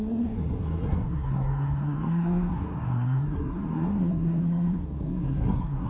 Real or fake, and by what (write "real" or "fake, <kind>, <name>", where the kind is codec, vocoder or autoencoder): fake, codec, SNAC